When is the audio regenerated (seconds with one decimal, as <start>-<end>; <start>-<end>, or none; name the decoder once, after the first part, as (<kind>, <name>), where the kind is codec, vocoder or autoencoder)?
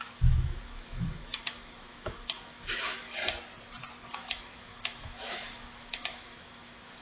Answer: 0.0-3.2 (autoencoder, DAC-VAE); 4.1-7.0